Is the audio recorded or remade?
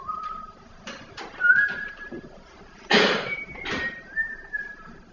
recorded